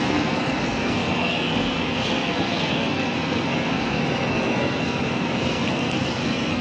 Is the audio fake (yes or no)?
yes